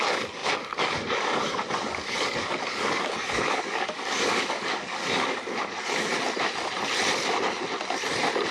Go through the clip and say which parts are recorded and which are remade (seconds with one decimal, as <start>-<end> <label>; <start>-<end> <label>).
0.0-6.1 remade; 6.1-8.5 recorded